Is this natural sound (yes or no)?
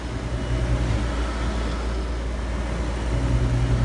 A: yes